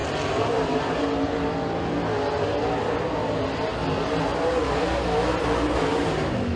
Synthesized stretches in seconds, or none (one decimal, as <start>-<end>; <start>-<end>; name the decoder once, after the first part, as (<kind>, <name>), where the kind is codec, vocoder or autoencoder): none